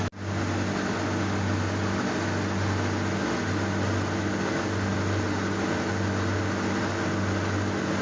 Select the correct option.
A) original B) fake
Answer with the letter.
A